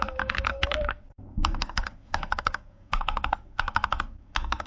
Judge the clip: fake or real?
fake